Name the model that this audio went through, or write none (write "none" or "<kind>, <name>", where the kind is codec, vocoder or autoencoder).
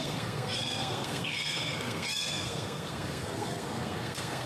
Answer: codec, SNAC